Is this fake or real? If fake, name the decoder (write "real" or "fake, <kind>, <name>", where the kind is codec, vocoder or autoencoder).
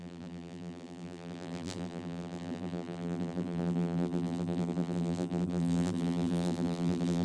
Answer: fake, vocoder, BigVGAN v2